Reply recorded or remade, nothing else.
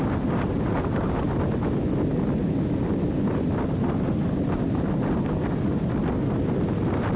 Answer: recorded